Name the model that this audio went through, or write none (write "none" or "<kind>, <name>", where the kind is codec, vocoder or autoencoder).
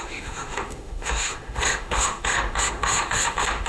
autoencoder, DAC-VAE